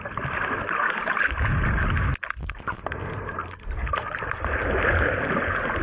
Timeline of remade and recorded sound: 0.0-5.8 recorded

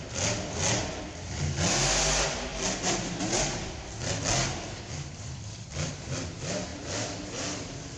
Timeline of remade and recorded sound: 0.0-8.0 recorded

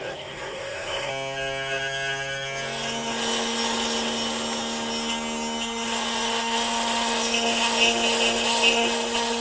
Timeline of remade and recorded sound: 0.0-1.1 remade; 1.1-9.4 recorded